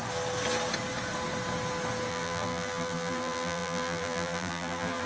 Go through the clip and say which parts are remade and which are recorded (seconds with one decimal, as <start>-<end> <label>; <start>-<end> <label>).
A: 0.0-2.1 recorded; 2.1-5.1 remade

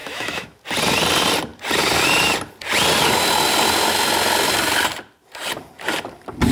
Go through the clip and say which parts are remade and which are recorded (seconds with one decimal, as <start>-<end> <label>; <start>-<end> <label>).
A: 0.0-0.6 remade; 0.6-6.5 recorded

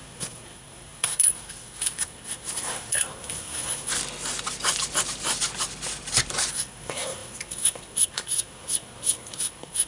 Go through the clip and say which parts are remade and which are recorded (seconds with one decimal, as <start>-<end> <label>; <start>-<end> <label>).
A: 0.0-3.9 remade; 3.9-6.5 recorded; 6.5-9.9 remade

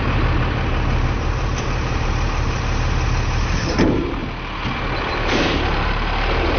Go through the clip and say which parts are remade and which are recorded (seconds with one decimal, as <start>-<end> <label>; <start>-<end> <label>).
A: 0.0-4.2 remade; 4.2-5.0 recorded; 5.0-6.6 remade

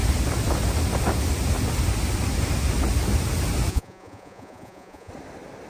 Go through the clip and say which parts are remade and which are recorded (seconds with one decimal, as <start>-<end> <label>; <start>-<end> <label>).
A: 0.0-3.7 recorded; 3.7-5.1 remade; 5.1-5.7 recorded

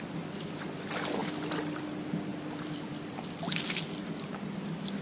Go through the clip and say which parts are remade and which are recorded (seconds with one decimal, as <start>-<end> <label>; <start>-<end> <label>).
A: 0.0-1.2 recorded; 1.2-1.8 remade; 1.8-2.3 recorded; 2.3-3.3 remade; 3.3-5.0 recorded

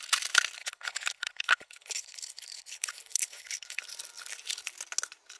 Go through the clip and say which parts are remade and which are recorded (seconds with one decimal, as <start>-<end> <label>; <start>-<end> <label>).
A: 0.0-0.6 recorded; 0.6-3.8 remade; 3.8-5.4 recorded

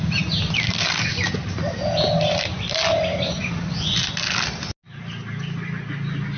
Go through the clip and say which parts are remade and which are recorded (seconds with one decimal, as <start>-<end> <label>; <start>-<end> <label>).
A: 0.0-6.4 recorded